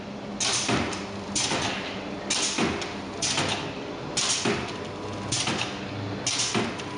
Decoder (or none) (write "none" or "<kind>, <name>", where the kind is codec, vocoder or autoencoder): none